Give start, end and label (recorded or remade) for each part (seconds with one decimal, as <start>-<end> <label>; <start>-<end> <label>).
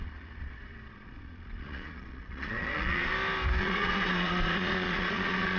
0.0-3.1 remade; 3.1-3.6 recorded; 3.6-5.6 remade